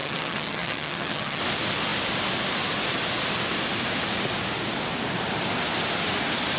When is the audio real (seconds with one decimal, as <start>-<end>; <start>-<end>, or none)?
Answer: 1.4-6.6